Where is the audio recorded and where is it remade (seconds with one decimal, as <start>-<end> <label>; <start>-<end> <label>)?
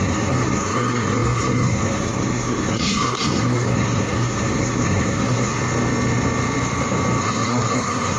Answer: 0.0-5.6 remade; 5.6-7.2 recorded; 7.2-8.2 remade